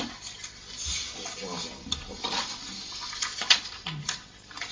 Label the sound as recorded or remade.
recorded